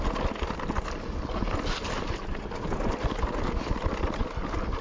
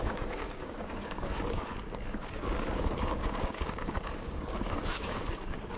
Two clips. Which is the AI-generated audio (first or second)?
second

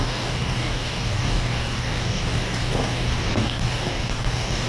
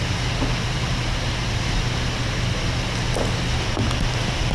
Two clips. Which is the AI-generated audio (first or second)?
first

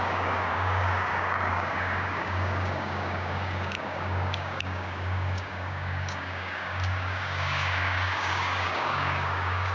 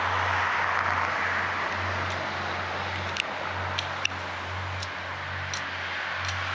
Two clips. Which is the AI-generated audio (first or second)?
first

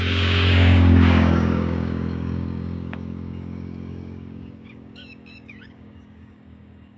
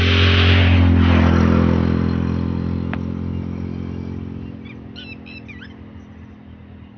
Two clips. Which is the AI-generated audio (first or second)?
first